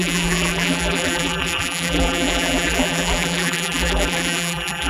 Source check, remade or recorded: remade